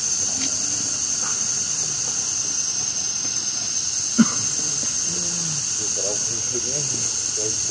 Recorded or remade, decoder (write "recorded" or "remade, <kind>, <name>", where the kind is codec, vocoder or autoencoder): recorded